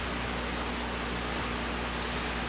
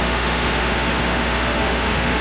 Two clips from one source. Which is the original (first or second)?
first